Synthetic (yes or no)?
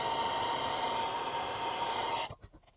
yes